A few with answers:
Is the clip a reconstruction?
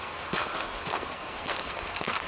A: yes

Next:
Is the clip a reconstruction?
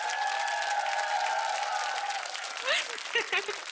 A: no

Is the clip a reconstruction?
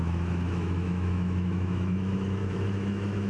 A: yes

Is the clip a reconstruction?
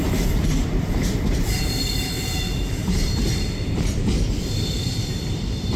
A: yes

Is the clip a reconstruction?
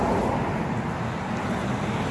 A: no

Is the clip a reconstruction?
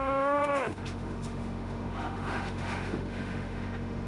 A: yes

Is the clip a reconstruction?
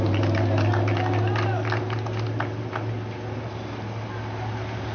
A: no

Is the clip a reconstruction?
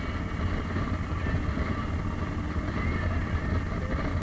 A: no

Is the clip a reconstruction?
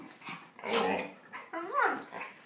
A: no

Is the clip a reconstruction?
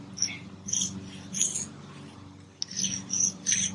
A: no